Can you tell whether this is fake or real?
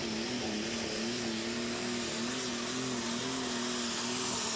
real